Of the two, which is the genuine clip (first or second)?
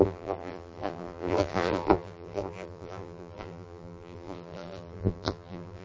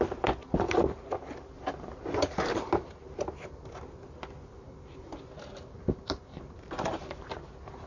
second